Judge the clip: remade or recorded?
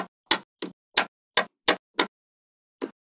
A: recorded